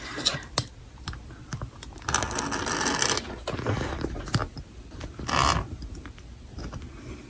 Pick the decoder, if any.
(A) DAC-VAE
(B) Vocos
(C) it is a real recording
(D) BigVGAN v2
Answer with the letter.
C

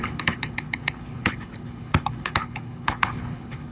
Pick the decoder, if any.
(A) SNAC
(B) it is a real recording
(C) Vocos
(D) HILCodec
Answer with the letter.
D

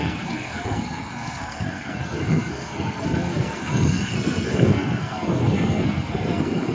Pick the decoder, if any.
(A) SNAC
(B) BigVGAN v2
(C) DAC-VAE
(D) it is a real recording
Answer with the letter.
A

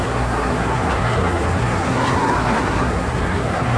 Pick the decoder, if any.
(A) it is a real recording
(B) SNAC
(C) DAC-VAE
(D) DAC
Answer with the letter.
B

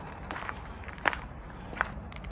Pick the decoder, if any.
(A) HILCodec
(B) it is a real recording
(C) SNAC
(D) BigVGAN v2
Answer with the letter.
D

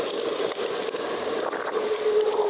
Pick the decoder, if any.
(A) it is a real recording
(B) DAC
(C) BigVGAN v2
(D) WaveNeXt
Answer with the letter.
A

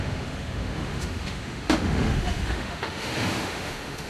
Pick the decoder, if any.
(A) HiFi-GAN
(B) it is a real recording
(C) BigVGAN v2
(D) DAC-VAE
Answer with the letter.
D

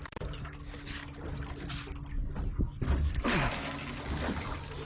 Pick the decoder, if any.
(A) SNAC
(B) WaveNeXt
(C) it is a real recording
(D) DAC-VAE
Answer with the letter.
C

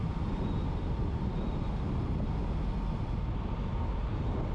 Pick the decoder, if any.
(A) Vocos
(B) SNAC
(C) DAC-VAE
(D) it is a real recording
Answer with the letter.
D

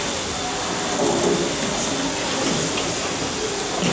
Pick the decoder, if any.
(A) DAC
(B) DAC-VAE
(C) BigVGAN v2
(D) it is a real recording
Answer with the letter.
D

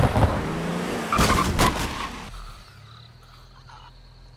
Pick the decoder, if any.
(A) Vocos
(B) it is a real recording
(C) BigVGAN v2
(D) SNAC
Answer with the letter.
B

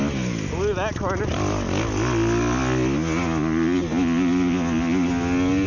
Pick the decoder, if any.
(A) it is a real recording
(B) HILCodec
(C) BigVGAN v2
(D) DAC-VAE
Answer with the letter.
A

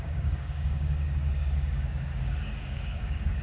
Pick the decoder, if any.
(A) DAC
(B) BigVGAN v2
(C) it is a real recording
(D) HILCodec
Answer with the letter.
A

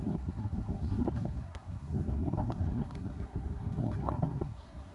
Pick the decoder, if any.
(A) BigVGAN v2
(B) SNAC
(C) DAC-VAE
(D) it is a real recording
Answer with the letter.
B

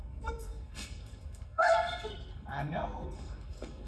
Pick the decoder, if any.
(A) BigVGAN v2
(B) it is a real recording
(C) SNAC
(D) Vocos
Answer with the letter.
C